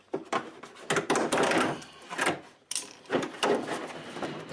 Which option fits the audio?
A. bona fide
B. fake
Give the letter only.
B